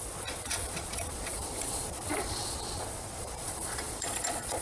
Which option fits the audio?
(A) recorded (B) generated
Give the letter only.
B